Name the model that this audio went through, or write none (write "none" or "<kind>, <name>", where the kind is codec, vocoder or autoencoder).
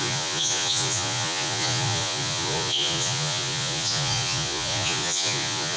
vocoder, Vocos